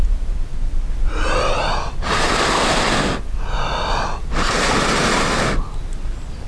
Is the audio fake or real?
real